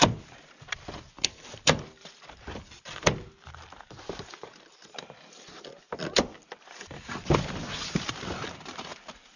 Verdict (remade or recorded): remade